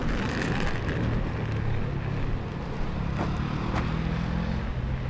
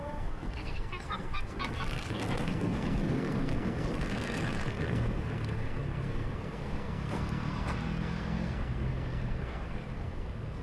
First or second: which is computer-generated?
second